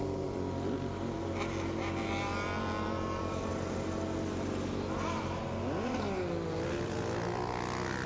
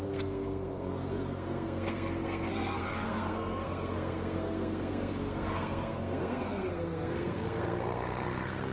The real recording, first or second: first